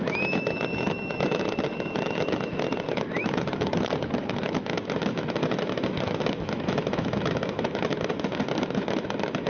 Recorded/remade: remade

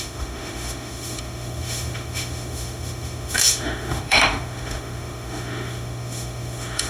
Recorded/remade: remade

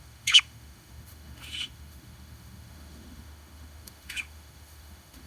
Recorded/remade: remade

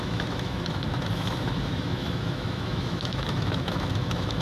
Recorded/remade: remade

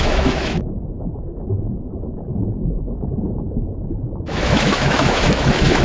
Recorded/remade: remade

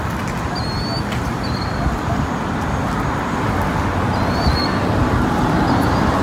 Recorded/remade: recorded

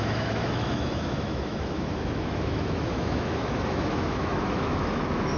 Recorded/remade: remade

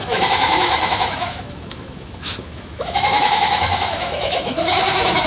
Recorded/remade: remade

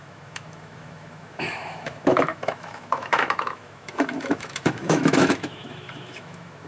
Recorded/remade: remade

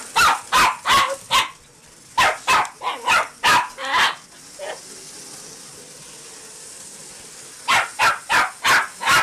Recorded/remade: recorded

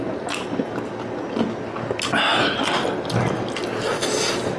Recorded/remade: recorded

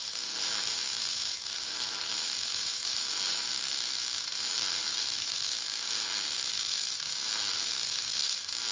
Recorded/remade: remade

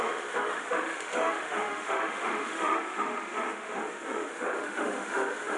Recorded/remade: remade